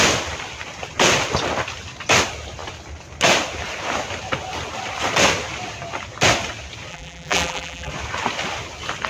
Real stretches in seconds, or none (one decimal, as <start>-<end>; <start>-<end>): 0.0-6.9; 7.9-9.1